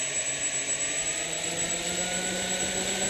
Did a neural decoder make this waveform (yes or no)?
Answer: no